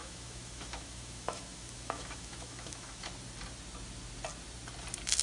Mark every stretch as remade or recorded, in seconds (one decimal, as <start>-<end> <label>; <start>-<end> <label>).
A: 0.0-3.1 remade; 3.1-5.2 recorded